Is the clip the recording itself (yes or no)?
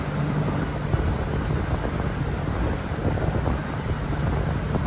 yes